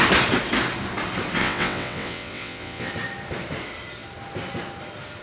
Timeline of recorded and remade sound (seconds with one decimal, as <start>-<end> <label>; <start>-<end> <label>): 0.0-1.4 recorded; 1.4-2.9 remade; 2.9-5.2 recorded